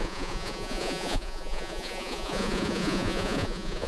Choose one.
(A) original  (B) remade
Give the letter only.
B